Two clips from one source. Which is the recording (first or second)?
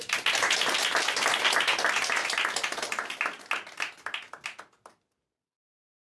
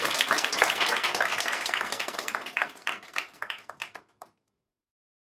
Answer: first